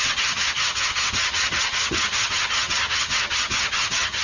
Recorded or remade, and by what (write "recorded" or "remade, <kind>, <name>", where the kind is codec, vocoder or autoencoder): remade, vocoder, HiFi-GAN